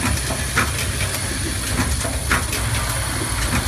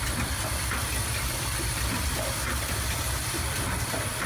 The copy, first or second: second